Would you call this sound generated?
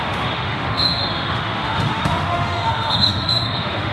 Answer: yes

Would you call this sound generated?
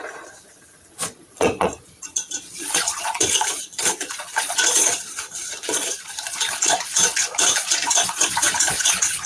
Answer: yes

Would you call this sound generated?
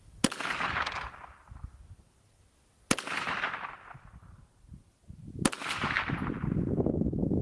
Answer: no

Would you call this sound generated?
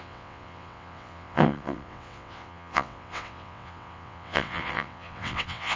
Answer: yes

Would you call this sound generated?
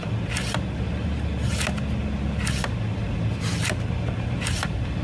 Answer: no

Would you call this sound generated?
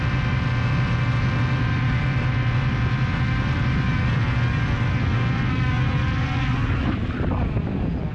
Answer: no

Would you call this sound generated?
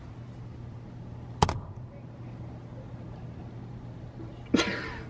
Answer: no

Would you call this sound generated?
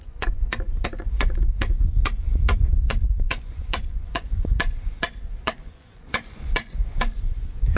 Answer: yes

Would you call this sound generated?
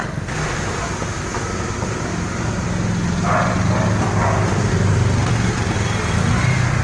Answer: no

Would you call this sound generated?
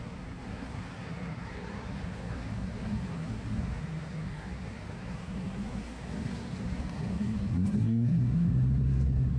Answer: yes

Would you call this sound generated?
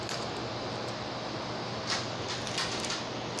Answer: no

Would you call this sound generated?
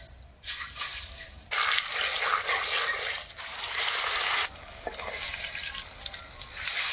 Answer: no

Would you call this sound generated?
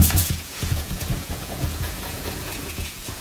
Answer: yes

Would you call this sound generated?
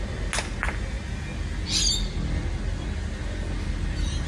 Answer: no